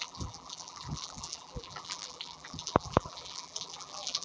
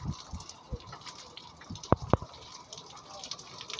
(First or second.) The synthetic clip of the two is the first